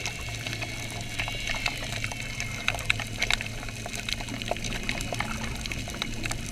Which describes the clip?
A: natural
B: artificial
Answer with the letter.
A